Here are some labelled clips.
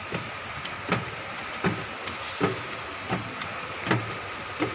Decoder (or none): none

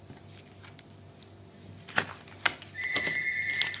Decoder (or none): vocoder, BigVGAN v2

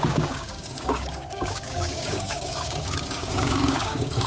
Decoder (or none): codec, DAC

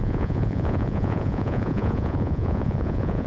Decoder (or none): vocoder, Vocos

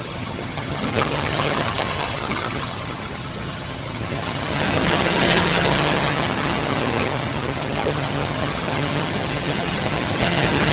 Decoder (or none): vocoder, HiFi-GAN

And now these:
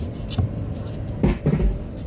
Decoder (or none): none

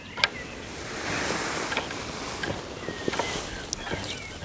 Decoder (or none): none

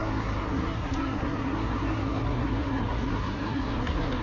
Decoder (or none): codec, SNAC